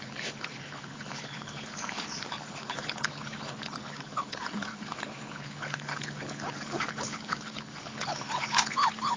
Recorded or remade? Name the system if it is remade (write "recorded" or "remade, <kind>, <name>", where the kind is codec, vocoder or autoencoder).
remade, codec, HILCodec